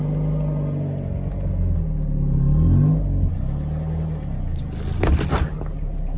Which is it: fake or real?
real